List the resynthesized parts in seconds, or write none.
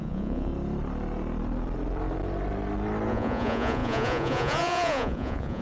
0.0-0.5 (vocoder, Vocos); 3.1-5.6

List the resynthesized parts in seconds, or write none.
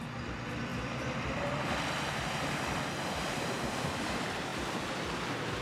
0.7-4.1 (vocoder, BigVGAN v2)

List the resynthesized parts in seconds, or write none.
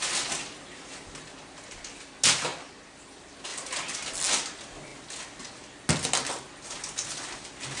none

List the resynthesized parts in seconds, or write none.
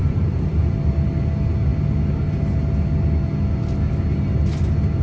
0.0-0.7 (vocoder, BigVGAN v2)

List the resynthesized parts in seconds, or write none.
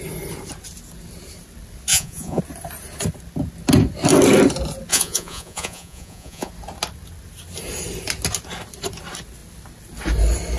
1.9-2.4 (vocoder, Vocos); 4.9-6.5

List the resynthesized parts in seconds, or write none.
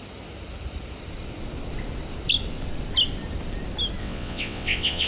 4.0-5.1 (vocoder, WaveNeXt)